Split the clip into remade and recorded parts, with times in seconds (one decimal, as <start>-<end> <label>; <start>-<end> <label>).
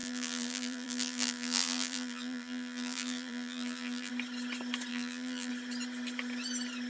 0.0-4.1 remade; 4.1-4.9 recorded; 4.9-5.5 remade; 5.5-6.9 recorded